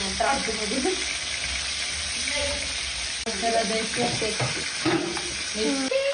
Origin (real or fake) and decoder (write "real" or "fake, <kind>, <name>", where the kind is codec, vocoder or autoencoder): real